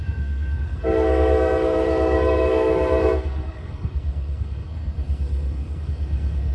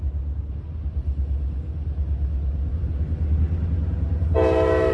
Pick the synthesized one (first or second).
first